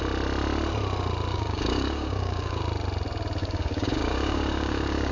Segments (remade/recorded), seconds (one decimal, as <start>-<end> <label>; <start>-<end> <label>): 0.0-1.3 recorded; 1.3-2.6 remade; 2.6-3.4 recorded; 3.4-5.1 remade